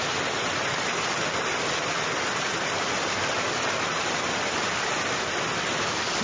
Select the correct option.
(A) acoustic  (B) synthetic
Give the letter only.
A